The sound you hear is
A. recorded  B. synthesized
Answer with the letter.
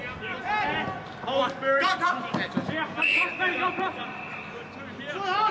A